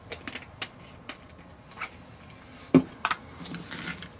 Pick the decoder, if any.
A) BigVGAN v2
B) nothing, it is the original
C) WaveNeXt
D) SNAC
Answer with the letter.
B